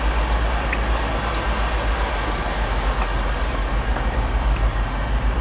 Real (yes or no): yes